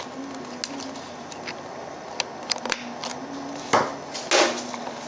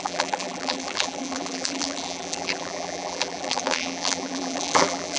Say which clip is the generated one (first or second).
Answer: second